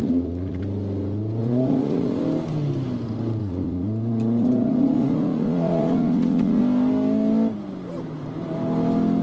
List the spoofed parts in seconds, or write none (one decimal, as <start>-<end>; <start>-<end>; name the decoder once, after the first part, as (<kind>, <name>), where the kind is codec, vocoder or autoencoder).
0.0-0.6 (vocoder, Vocos); 1.4-2.2; 3.4-6.6